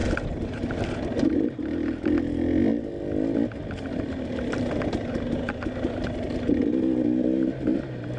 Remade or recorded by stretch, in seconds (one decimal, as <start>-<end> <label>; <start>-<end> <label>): 0.0-8.2 recorded